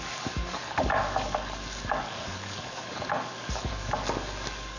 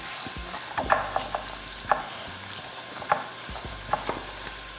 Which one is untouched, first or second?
second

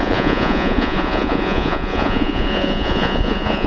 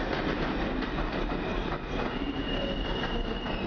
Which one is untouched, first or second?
second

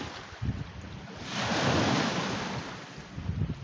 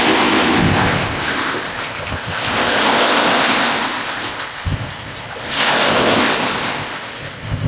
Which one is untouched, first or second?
first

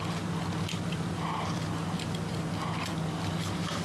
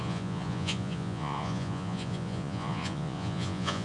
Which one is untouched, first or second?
first